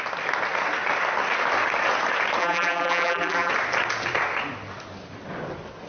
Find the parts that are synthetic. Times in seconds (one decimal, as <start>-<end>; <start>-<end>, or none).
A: 2.4-3.5